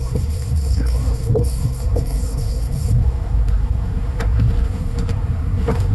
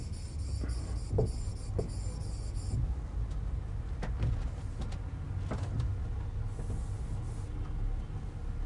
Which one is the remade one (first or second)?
first